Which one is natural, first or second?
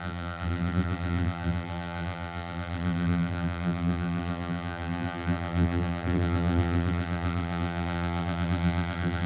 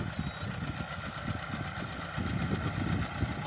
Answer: second